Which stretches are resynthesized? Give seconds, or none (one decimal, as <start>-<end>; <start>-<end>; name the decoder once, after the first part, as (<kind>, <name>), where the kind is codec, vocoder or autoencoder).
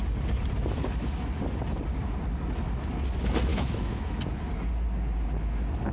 3.5-4.2 (autoencoder, DAC-VAE)